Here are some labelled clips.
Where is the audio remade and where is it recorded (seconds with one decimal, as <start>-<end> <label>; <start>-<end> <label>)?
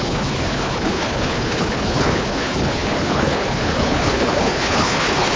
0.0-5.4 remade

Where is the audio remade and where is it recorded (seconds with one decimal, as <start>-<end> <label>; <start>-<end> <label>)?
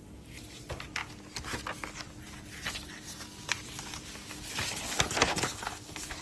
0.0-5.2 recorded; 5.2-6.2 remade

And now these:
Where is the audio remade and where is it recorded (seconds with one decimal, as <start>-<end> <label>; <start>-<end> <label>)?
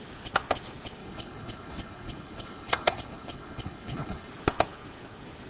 0.0-1.0 recorded; 1.0-4.3 remade; 4.3-5.5 recorded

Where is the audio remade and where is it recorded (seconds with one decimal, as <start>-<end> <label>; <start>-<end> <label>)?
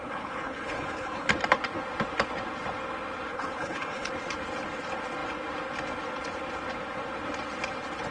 0.0-1.3 remade; 1.3-3.3 recorded; 3.3-4.1 remade; 4.1-8.1 recorded